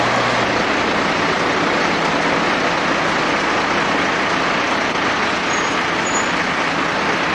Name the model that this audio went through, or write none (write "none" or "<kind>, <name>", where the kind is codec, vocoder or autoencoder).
none